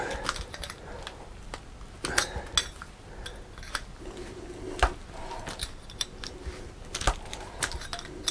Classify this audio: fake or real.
real